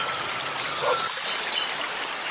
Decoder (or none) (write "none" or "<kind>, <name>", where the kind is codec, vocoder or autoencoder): none